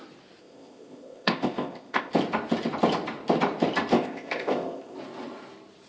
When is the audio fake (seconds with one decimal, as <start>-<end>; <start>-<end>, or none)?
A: 0.4-2.1; 3.9-5.0